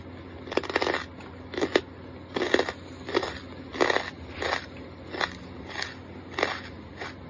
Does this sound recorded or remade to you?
recorded